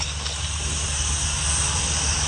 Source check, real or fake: real